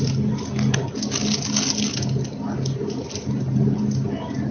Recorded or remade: recorded